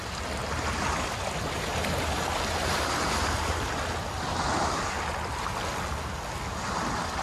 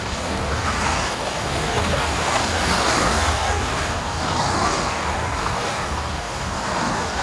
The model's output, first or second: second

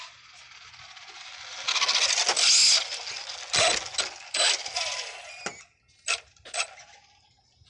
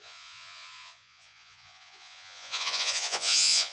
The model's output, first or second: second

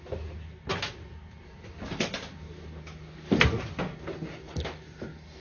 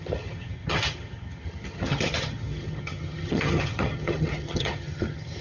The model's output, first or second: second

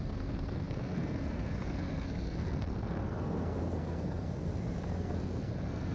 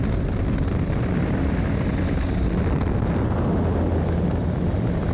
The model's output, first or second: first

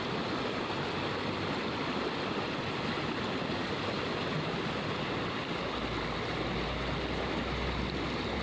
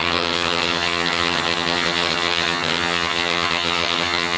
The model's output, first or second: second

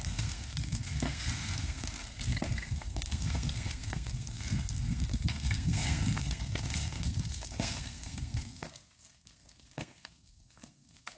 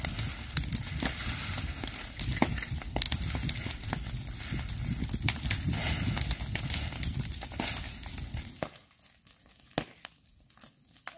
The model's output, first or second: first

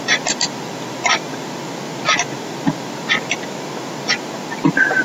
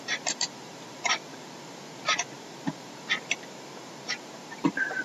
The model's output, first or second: second